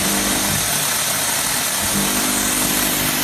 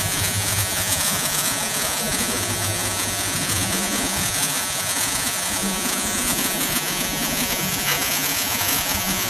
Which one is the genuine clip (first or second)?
first